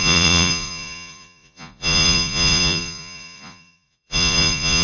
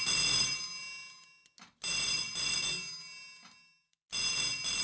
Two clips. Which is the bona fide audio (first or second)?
second